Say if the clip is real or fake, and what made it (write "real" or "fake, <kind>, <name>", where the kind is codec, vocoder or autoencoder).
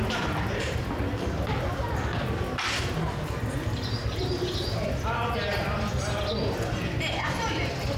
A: real